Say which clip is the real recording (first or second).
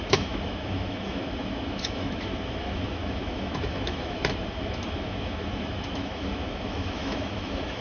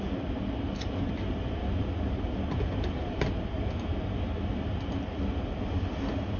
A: second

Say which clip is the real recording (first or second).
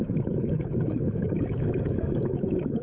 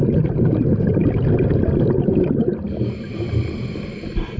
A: second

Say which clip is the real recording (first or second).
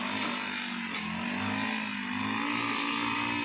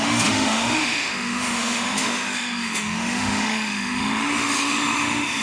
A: first